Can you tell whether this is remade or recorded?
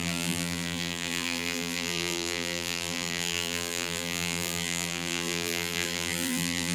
remade